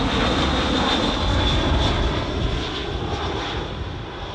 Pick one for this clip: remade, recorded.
recorded